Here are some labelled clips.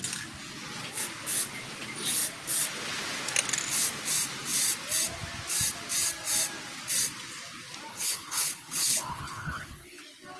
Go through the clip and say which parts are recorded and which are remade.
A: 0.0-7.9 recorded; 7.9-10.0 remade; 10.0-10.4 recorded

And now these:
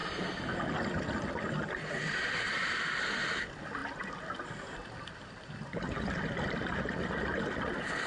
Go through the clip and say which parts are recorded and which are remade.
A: 0.0-8.1 recorded

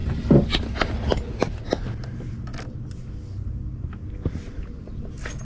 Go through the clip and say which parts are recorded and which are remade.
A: 0.0-5.4 recorded

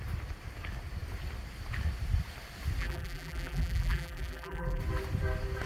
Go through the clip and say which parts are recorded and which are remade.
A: 0.0-2.8 recorded; 2.8-4.8 remade; 4.8-5.7 recorded

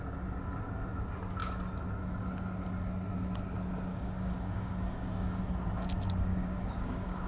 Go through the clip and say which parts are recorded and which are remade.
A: 0.0-3.9 recorded; 3.9-5.4 remade; 5.4-6.3 recorded; 6.3-7.3 remade

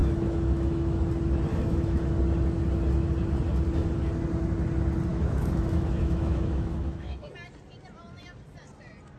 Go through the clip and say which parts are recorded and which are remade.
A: 0.0-1.0 remade; 1.0-1.5 recorded; 1.5-2.2 remade; 2.2-5.1 recorded; 5.1-7.3 remade; 7.3-9.2 recorded

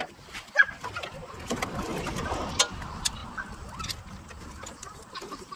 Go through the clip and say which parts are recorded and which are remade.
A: 0.0-1.9 recorded; 1.9-2.5 remade; 2.5-5.6 recorded

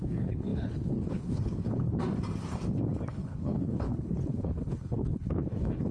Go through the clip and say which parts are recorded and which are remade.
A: 0.0-1.9 remade; 1.9-3.1 recorded; 3.1-5.9 remade